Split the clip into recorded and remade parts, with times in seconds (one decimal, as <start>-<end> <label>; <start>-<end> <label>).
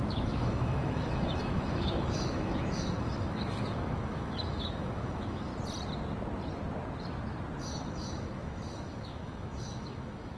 0.0-5.5 remade; 5.5-7.6 recorded; 7.6-10.4 remade